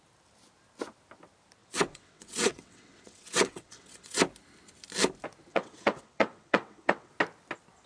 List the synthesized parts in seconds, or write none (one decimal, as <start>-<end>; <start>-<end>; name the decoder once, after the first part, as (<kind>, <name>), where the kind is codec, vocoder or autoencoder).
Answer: 1.6-4.2 (vocoder, WaveNeXt); 5.5-7.1